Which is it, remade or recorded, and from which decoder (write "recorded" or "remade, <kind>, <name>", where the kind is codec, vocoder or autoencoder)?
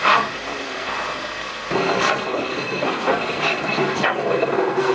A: remade, codec, SNAC